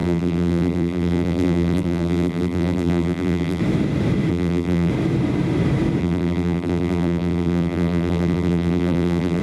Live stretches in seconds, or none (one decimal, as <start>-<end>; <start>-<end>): 3.6-4.3; 4.9-6.0